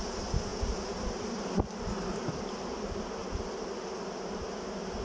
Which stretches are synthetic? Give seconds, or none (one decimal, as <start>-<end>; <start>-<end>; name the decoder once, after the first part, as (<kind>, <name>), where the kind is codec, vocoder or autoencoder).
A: none